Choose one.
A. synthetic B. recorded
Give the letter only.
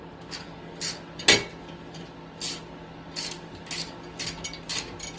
B